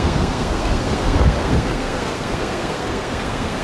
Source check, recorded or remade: remade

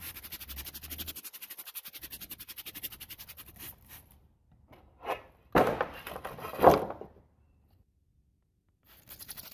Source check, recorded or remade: recorded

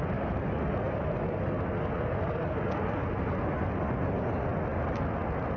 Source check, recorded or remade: recorded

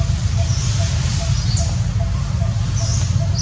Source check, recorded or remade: recorded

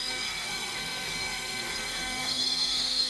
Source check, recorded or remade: remade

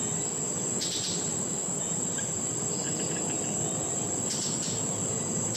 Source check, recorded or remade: remade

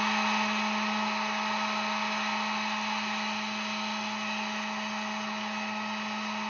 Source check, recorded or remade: recorded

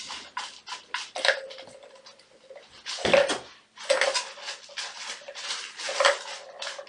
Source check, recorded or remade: recorded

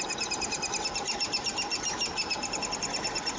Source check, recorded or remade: recorded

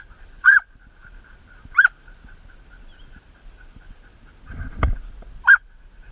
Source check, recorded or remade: recorded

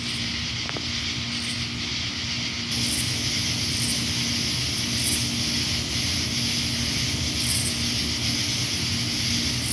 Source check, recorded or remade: recorded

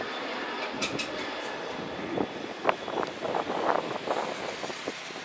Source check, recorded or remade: recorded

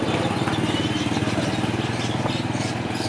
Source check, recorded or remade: recorded